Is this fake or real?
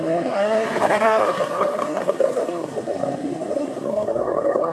fake